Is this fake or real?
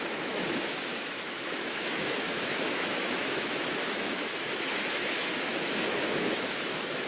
fake